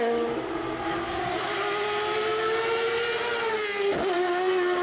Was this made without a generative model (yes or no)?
yes